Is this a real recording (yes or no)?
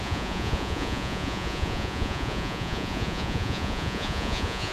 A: no